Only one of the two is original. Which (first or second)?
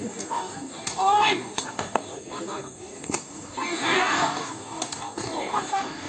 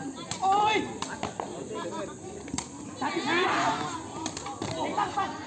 second